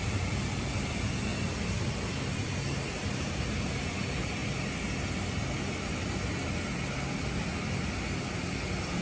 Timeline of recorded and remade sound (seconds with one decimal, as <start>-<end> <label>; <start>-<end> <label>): 0.0-1.3 remade; 1.3-1.9 recorded; 1.9-4.4 remade; 4.4-9.0 recorded